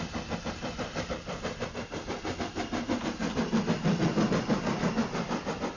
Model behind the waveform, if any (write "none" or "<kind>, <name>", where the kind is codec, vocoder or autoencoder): none